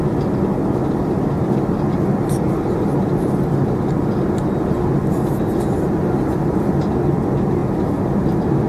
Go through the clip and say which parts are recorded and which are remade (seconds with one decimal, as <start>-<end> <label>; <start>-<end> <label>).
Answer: 0.0-8.7 recorded